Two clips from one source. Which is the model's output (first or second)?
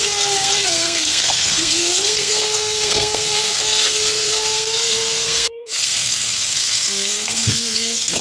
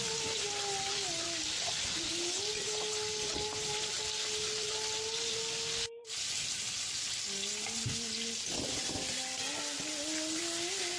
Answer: first